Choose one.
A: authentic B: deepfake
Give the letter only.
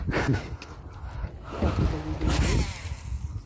A